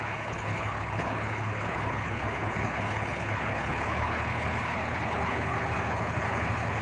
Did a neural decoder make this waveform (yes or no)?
yes